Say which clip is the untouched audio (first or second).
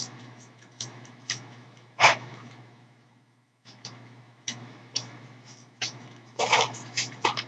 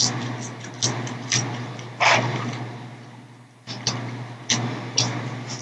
second